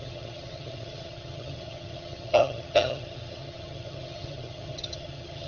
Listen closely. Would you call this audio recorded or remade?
remade